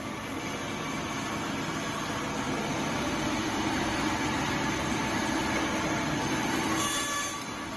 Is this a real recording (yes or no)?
yes